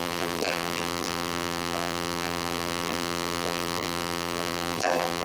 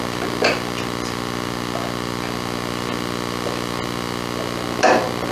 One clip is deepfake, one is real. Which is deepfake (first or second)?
first